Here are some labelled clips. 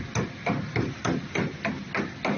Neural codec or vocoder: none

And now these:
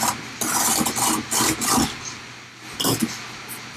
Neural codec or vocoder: none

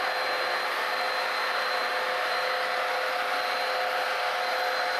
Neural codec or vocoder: none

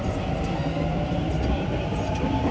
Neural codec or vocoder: none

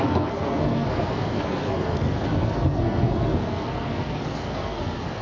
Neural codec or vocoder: codec, SNAC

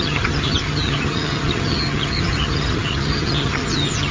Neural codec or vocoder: vocoder, HiFi-GAN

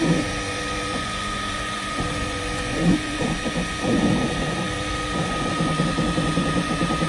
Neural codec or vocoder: vocoder, Vocos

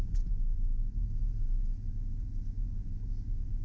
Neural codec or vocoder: none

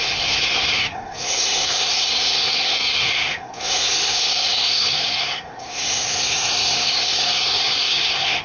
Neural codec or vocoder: codec, SNAC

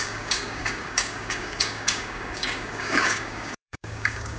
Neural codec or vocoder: codec, DAC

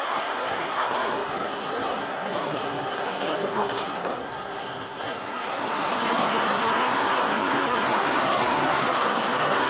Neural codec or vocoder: codec, SNAC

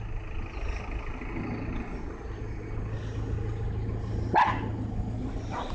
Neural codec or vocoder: none